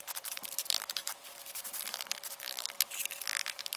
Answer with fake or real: fake